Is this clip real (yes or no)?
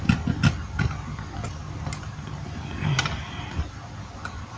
yes